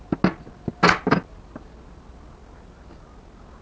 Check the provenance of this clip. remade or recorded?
recorded